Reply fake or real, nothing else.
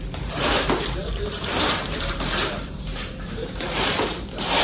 fake